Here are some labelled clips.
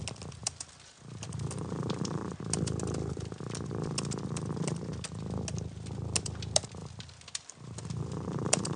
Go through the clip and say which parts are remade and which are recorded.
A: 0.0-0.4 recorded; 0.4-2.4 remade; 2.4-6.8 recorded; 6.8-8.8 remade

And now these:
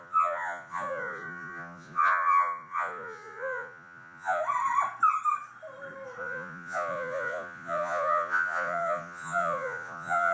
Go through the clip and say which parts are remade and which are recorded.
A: 0.0-4.4 remade; 4.4-6.2 recorded; 6.2-10.3 remade